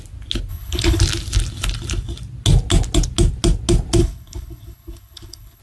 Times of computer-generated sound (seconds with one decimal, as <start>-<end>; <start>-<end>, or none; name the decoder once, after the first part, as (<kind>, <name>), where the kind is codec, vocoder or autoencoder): 0.5-1.0 (codec, HILCodec); 4.0-5.6